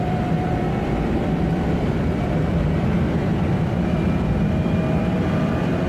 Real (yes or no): no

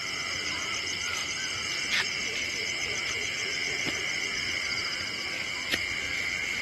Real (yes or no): yes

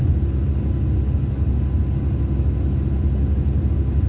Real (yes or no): yes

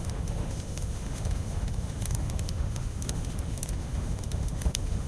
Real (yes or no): no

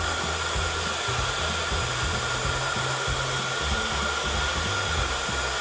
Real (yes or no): yes